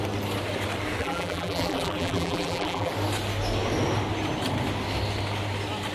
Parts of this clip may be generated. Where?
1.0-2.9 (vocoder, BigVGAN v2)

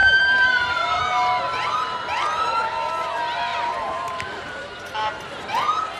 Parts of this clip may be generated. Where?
0.0-1.0 (vocoder, BigVGAN v2); 3.5-5.1

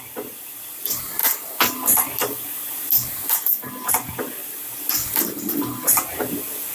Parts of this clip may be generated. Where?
1.2-3.9 (vocoder, BigVGAN v2)

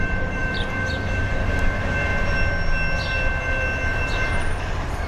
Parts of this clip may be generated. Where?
0.0-2.1 (vocoder, BigVGAN v2); 4.0-5.1